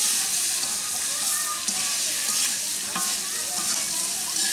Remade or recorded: recorded